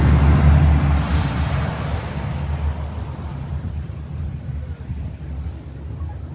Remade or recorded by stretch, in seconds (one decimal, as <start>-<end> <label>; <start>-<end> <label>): 0.0-1.1 recorded; 1.1-1.7 remade; 1.7-3.3 recorded; 3.3-4.6 remade; 4.6-6.3 recorded